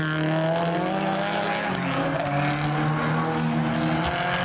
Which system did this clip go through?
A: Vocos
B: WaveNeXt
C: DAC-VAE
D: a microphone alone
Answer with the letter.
D